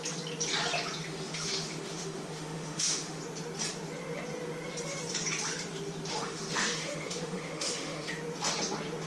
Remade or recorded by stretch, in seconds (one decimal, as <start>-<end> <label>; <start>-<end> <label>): 0.0-1.0 recorded; 1.0-3.2 remade; 3.2-6.1 recorded; 6.1-8.1 remade; 8.1-9.1 recorded